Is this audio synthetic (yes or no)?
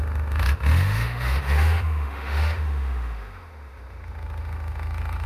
yes